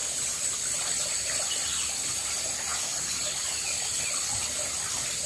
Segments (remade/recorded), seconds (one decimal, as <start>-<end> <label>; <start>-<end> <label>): 0.0-5.3 recorded

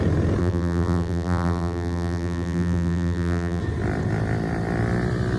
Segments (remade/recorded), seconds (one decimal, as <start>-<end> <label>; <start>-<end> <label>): 0.0-0.4 recorded; 0.4-3.6 remade; 3.6-5.4 recorded

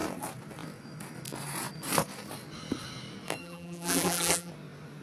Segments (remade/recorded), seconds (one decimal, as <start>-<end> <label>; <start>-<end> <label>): 0.0-3.4 recorded; 3.4-4.5 remade; 4.5-5.0 recorded

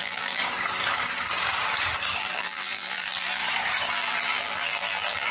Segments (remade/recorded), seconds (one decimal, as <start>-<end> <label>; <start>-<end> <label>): 0.0-0.4 remade; 0.4-2.2 recorded; 2.2-3.4 remade; 3.4-3.9 recorded; 3.9-5.3 remade

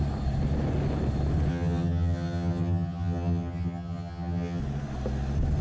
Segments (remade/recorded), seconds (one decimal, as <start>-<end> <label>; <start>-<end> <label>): 0.0-1.5 recorded; 1.5-4.6 remade; 4.6-5.6 recorded

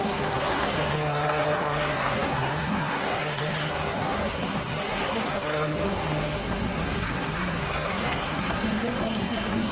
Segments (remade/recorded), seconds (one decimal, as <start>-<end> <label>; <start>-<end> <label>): 0.0-9.7 remade